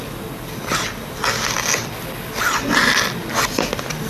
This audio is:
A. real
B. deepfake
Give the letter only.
A